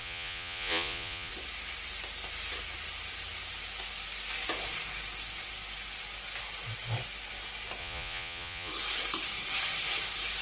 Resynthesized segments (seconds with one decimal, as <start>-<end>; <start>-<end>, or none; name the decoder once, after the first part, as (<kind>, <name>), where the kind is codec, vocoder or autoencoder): 0.0-1.3 (vocoder, Vocos); 7.8-8.7

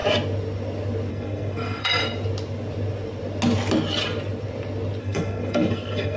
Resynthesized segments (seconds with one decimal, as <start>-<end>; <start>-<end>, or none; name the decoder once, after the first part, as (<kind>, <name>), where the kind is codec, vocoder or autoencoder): 1.1-2.0 (codec, SNAC); 5.0-6.2

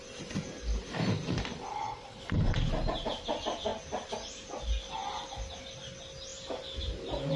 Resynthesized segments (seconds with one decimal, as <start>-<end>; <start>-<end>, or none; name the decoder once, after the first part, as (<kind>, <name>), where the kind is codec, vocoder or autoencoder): 1.7-2.6 (codec, HILCodec)

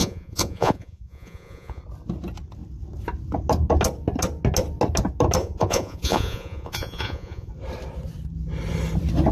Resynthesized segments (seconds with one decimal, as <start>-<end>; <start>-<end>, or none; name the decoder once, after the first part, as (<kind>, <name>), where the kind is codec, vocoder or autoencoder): 0.0-1.8 (vocoder, Vocos); 5.4-7.5

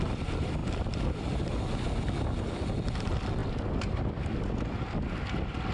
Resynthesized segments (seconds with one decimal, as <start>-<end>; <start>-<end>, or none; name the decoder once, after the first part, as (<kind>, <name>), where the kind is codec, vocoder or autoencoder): none

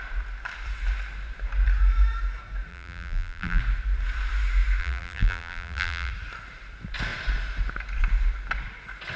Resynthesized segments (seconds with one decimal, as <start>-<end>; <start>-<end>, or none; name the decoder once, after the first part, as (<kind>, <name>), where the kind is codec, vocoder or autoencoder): 2.7-3.6 (vocoder, BigVGAN v2); 4.8-6.1